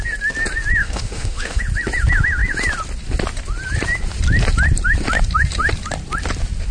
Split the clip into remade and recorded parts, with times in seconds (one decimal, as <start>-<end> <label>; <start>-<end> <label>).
0.0-0.8 recorded; 0.8-1.6 remade; 1.6-6.7 recorded